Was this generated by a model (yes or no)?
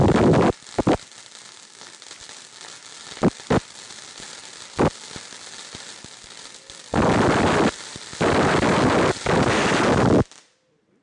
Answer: no